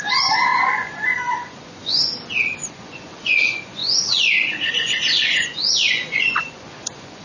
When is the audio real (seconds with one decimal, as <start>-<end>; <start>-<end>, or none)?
2.1-2.7

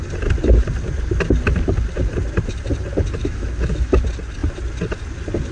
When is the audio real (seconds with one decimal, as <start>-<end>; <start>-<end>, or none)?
0.0-3.2; 4.0-5.5

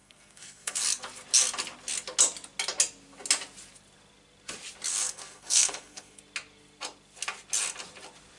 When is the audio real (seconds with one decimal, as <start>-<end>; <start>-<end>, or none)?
0.8-4.9; 6.2-8.4